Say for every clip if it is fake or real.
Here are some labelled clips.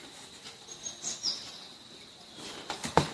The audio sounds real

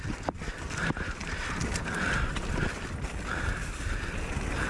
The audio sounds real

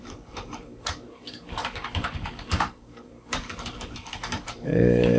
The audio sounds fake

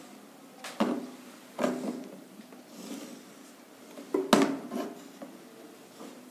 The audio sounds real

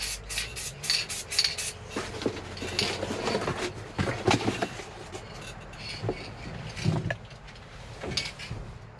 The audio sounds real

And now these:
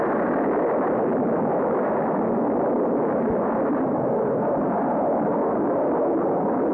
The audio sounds real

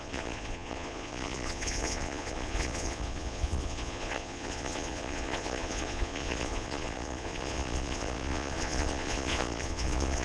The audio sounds fake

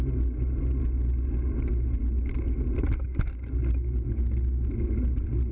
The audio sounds real